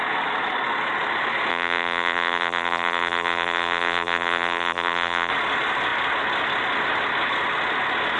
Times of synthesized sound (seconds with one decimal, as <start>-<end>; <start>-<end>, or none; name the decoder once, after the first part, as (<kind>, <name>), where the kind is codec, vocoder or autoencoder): 1.5-5.3 (vocoder, BigVGAN v2)